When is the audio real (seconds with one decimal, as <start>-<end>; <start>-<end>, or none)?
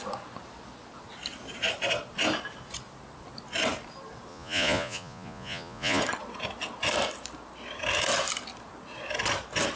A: 0.0-4.3; 6.0-9.8